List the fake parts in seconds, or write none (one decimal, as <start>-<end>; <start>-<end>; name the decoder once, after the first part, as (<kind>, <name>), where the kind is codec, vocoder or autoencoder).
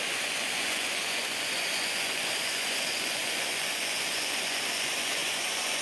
0.0-5.8 (vocoder, Vocos)